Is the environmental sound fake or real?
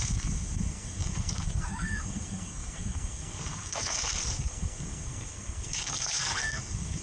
fake